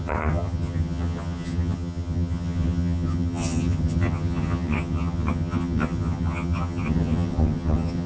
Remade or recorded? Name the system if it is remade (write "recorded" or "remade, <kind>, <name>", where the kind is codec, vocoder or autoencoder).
remade, vocoder, HiFi-GAN